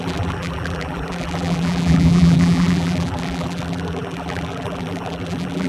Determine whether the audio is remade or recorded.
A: remade